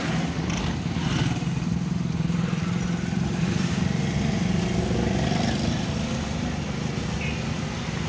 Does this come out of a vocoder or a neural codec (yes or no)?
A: no